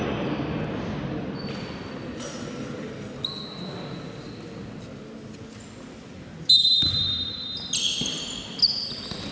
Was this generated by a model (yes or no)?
no